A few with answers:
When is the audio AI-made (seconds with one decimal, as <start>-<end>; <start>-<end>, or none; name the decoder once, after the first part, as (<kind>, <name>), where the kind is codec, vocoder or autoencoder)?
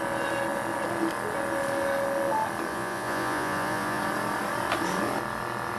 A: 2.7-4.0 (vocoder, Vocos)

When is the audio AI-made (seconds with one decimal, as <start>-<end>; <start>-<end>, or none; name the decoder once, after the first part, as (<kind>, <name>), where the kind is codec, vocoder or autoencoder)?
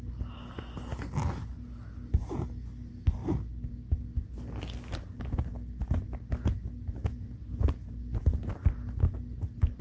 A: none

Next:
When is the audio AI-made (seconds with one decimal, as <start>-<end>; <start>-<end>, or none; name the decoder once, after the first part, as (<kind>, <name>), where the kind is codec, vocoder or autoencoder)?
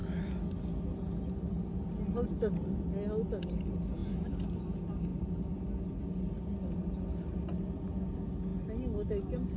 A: none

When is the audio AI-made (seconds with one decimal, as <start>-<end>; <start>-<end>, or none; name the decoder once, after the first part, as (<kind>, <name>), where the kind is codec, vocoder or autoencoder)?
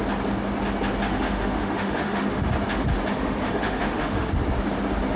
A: 1.1-2.5 (autoencoder, DAC-VAE); 3.1-4.3